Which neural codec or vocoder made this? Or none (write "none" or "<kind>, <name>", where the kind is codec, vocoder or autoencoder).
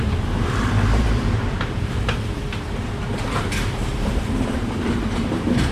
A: vocoder, BigVGAN v2